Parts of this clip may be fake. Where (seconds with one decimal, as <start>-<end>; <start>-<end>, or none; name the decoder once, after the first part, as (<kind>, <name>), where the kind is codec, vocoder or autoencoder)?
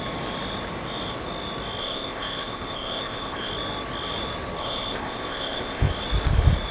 1.8-3.5 (codec, ZipCodec); 4.6-5.9